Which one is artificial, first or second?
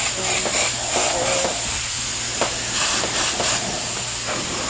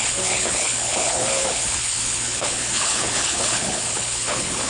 second